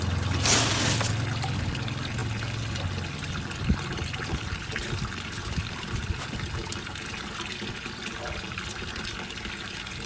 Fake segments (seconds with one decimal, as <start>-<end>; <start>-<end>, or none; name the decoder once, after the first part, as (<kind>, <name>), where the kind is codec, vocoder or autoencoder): none

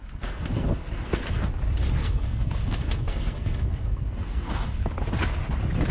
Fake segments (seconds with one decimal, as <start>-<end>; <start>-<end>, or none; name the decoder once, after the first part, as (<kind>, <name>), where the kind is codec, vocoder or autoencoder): 0.0-1.5 (codec, SNAC); 2.0-4.9

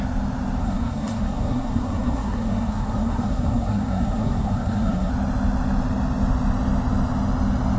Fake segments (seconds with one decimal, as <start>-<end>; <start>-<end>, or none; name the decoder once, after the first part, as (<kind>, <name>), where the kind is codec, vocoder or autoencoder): 0.6-5.1 (codec, SNAC)

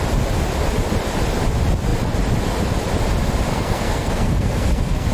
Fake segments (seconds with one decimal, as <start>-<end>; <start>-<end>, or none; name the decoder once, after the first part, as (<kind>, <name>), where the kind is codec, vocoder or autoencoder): 3.5-5.1 (codec, SNAC)

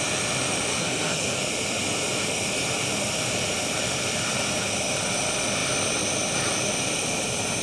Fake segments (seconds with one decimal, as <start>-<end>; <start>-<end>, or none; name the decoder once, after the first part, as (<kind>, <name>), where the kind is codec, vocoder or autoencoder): 0.7-1.4 (codec, SNAC)

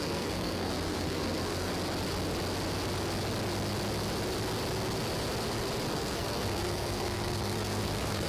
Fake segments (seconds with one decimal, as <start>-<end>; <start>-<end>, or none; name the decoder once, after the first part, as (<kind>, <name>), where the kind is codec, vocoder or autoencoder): 0.0-1.7 (codec, SNAC); 5.9-8.3

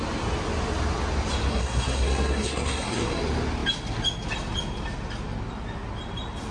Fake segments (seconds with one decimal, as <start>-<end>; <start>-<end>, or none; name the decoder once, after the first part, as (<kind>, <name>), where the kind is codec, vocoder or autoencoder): 1.5-3.2 (codec, SNAC)